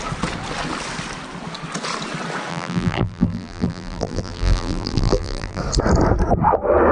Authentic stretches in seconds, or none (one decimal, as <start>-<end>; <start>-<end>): 0.0-2.5; 5.6-6.9